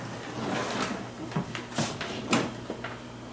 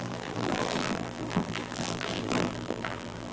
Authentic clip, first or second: first